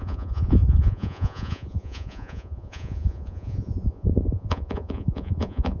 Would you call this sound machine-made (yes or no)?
yes